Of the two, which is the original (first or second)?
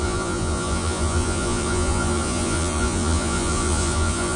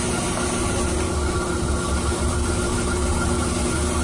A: second